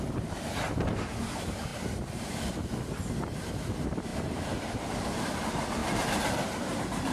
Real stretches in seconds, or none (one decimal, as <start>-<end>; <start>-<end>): none